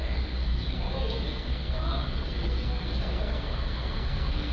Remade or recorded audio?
remade